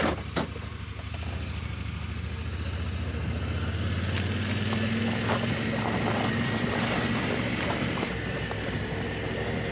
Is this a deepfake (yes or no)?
no